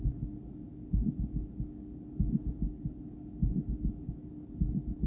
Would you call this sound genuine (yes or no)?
yes